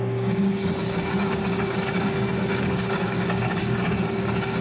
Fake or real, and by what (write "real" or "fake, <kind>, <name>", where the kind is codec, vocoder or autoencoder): fake, codec, DAC